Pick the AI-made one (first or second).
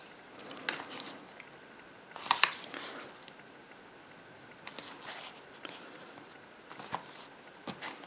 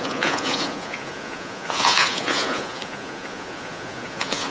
second